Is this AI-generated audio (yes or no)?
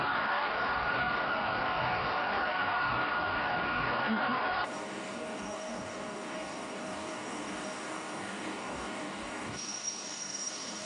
yes